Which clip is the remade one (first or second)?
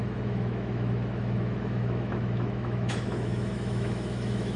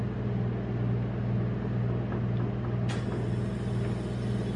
first